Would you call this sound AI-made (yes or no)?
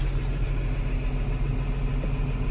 no